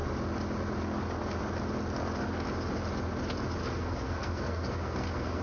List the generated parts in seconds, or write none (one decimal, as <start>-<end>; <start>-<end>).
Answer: 3.6-5.4